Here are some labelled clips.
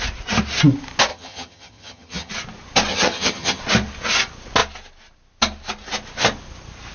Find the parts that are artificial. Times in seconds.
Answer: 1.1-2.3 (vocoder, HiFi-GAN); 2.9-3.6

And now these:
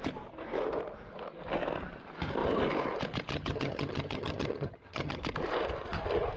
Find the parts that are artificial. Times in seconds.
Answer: 3.3-5.2 (vocoder, HiFi-GAN)